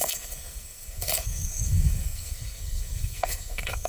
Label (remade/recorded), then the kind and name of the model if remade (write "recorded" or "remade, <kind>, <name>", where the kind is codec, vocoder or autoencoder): remade, codec, SNAC